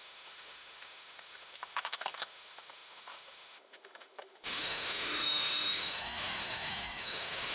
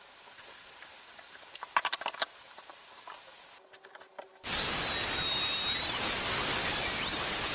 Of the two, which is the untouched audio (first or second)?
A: second